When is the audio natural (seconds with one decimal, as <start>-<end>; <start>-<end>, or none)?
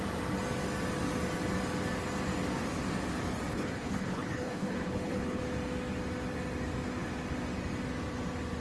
0.0-3.5; 5.4-8.6